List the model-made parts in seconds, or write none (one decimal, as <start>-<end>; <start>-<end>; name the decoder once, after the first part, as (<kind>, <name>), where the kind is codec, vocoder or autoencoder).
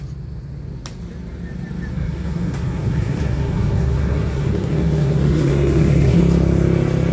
1.9-6.2 (codec, SNAC)